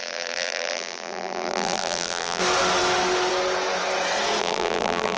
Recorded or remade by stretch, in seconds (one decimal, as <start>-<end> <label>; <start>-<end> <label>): 0.0-2.4 remade; 2.4-4.4 recorded; 4.4-5.2 remade

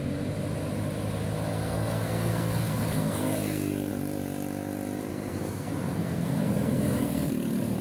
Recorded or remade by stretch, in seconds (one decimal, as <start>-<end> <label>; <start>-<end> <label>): 0.0-1.5 recorded; 1.5-3.9 remade; 3.9-5.1 recorded; 5.1-7.3 remade; 7.3-7.8 recorded

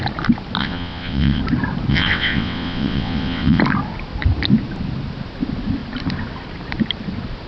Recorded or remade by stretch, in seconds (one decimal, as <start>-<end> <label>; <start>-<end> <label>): 0.0-0.6 recorded; 0.6-1.4 remade; 1.4-1.9 recorded; 1.9-3.6 remade; 3.6-7.5 recorded